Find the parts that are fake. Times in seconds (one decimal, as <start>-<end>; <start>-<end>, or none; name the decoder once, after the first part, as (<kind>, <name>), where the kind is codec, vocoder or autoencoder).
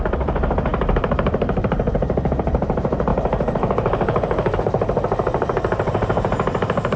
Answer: 0.0-7.0 (vocoder, BigVGAN v2)